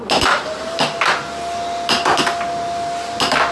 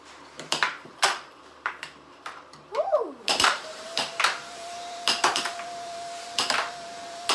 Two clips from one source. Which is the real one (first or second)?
first